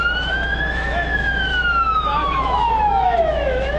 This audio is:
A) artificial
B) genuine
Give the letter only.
A